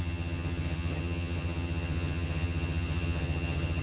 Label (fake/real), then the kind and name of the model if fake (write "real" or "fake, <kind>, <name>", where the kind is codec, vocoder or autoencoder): fake, vocoder, HiFi-GAN